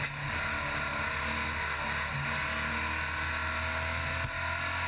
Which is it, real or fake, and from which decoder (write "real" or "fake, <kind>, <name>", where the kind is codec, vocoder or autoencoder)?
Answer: real